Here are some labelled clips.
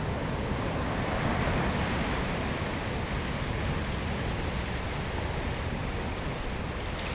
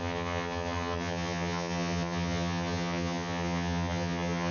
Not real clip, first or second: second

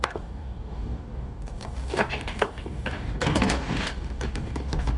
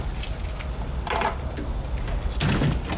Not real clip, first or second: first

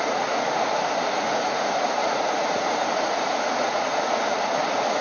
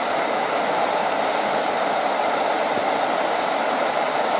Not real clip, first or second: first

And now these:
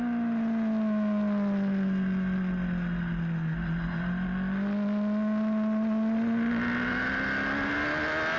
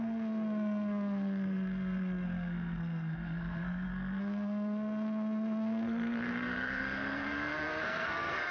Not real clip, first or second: second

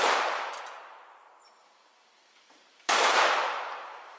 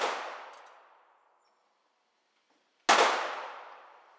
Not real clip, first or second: first